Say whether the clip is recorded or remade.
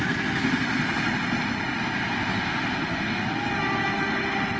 recorded